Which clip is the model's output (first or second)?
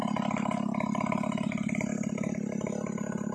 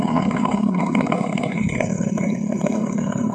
second